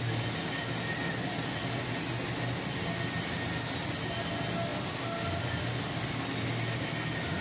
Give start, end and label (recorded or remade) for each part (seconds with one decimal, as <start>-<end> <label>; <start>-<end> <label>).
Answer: 0.0-7.4 recorded